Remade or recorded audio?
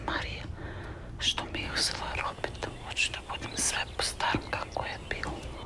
recorded